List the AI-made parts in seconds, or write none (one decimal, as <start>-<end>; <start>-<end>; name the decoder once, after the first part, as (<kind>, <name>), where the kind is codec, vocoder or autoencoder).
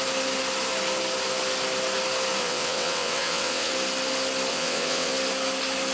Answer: 2.4-3.7 (vocoder, WaveNeXt); 4.5-5.1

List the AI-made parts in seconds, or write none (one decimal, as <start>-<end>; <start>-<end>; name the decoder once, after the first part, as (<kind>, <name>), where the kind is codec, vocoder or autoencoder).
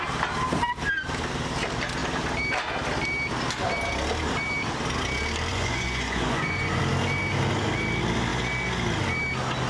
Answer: 5.5-6.8 (vocoder, Vocos)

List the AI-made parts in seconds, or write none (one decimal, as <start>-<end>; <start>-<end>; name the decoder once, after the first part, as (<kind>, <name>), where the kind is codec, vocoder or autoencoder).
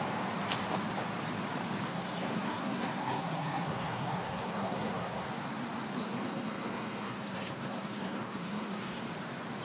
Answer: 1.9-5.3 (codec, SNAC); 6.0-9.0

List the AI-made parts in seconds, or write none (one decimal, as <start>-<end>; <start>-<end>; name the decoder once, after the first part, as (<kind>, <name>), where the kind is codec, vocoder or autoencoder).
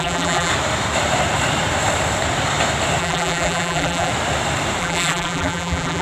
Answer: 0.0-0.5 (vocoder, BigVGAN v2); 3.0-4.1; 4.8-6.0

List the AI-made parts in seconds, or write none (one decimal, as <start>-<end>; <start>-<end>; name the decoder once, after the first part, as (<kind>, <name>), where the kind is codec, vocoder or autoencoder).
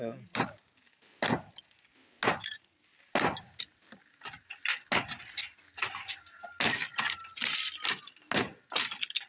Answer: none